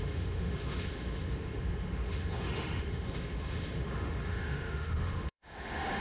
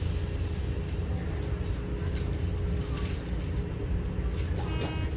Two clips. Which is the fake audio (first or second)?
first